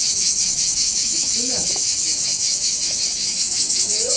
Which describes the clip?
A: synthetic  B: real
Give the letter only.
A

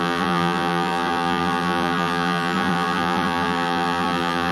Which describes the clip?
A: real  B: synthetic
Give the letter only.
B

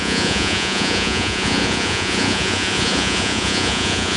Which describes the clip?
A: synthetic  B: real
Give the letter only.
A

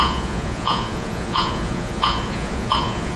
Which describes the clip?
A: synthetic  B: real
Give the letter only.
A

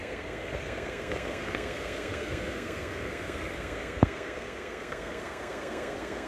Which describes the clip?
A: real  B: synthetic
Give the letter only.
B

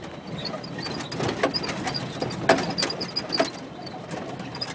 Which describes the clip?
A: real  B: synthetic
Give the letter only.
A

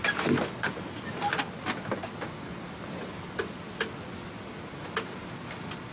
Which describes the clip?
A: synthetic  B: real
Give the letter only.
B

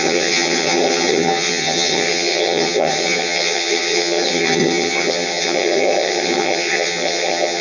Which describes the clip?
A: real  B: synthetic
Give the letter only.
B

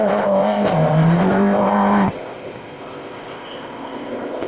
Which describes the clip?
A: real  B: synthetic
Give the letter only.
B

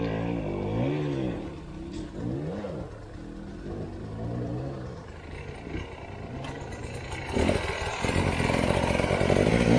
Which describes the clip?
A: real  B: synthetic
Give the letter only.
A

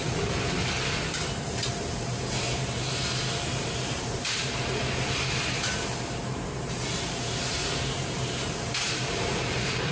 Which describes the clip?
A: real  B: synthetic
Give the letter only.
B